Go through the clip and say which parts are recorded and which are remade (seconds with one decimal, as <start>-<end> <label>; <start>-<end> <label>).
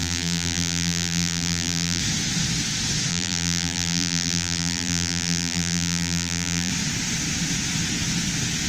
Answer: 0.0-2.0 remade; 2.0-3.1 recorded; 3.1-6.7 remade; 6.7-8.7 recorded